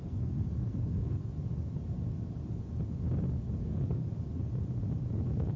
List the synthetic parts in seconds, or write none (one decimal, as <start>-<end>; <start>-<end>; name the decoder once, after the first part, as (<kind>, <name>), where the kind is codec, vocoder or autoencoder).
0.0-1.3 (codec, SNAC); 3.6-4.0; 5.1-5.6